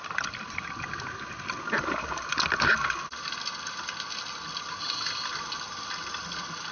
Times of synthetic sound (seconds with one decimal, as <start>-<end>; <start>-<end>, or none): none